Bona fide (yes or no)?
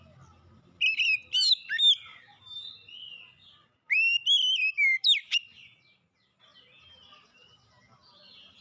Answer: yes